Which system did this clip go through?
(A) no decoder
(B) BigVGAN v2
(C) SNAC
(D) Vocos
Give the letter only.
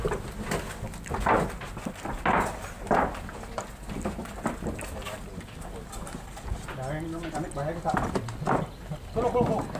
A